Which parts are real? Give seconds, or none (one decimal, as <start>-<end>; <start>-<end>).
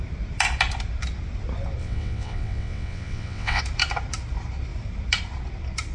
0.0-1.8; 3.6-5.9